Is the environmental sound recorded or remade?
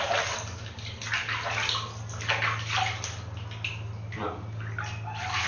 recorded